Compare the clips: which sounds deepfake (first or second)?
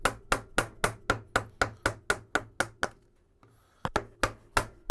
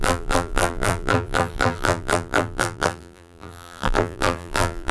second